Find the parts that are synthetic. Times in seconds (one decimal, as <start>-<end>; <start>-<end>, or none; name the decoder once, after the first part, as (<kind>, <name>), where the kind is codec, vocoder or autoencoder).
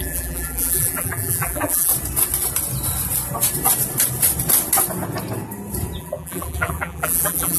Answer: 0.0-1.9 (vocoder, BigVGAN v2); 6.0-7.6